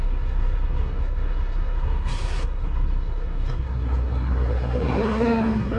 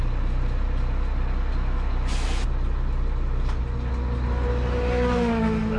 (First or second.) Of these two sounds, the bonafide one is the second